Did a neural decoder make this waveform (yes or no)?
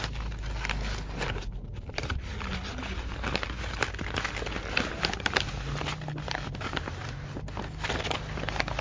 no